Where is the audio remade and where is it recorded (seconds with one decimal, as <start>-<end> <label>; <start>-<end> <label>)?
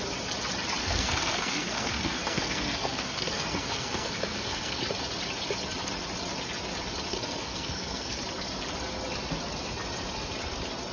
0.0-0.8 recorded; 0.8-4.8 remade; 4.8-7.1 recorded; 7.1-8.2 remade; 8.2-10.9 recorded